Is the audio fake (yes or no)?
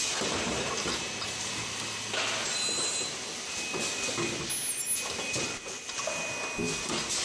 no